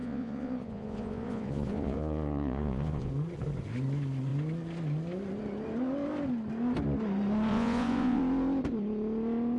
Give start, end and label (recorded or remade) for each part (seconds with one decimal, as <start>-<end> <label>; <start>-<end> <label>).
0.0-3.1 remade; 3.1-7.5 recorded; 7.5-8.2 remade; 8.2-9.6 recorded